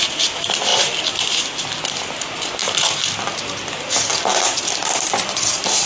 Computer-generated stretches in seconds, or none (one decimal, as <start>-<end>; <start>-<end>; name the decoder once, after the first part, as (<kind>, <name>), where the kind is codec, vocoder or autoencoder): none

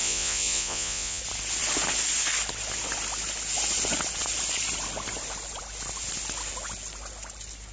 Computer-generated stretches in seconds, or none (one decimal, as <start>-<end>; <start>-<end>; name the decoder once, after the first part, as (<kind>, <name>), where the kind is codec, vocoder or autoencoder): 0.0-1.2 (vocoder, Vocos)

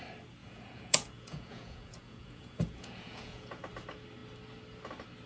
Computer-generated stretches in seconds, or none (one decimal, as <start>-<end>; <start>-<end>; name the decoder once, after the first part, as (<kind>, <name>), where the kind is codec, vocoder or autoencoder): 0.4-3.6 (vocoder, Vocos)